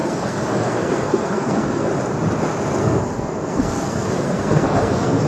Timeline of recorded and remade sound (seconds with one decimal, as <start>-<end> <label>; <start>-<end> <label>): 0.0-1.9 remade; 1.9-2.8 recorded; 2.8-5.3 remade